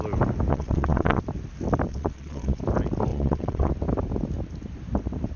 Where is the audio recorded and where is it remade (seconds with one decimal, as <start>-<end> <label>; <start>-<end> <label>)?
0.0-0.5 recorded; 0.5-1.2 remade; 1.2-1.9 recorded; 1.9-2.6 remade; 2.6-3.1 recorded; 3.1-3.7 remade; 3.7-5.4 recorded